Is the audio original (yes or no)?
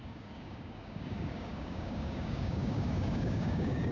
no